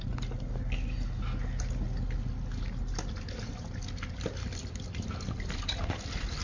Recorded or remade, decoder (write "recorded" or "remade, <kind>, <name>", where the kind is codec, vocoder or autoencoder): recorded